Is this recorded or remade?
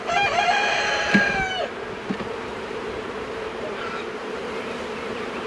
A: remade